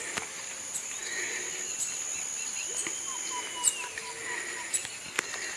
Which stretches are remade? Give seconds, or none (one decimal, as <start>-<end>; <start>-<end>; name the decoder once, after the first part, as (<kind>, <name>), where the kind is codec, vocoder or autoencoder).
none